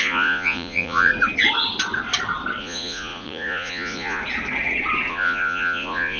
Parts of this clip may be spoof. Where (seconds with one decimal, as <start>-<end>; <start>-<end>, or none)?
0.0-1.1; 2.6-4.2; 5.1-6.2